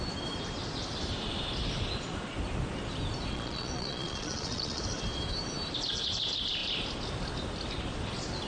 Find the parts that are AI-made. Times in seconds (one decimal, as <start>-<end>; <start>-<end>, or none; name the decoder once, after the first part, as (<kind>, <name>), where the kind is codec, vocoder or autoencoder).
3.3-4.8 (vocoder, Vocos)